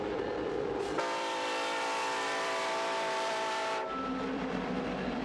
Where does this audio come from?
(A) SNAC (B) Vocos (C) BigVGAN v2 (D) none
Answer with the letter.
C